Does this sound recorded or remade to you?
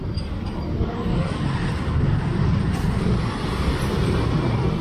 recorded